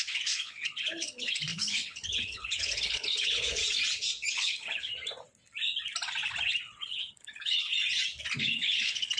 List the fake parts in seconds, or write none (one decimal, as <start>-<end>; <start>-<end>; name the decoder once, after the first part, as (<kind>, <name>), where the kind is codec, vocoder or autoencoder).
0.0-3.6 (codec, HILCodec); 4.3-4.9; 6.8-7.7; 8.4-9.2